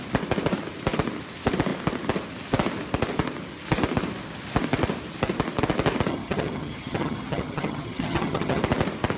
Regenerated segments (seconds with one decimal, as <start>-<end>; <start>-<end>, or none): 6.1-8.6